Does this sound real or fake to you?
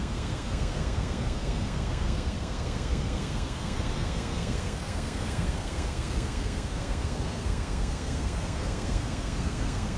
fake